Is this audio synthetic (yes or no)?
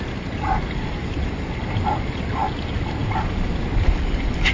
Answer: no